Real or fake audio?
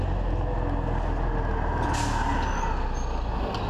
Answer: real